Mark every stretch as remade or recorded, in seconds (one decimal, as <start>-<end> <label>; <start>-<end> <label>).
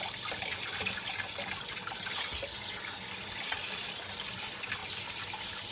0.0-5.7 recorded